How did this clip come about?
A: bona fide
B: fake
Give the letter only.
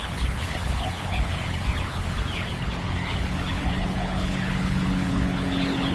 B